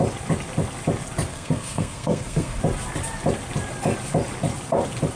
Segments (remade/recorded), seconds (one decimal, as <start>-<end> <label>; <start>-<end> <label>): 0.0-1.3 recorded; 1.3-2.6 remade; 2.6-5.1 recorded